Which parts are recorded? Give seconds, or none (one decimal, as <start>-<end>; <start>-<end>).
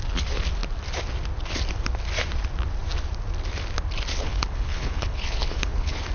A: 0.0-4.1